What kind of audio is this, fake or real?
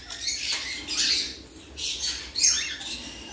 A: real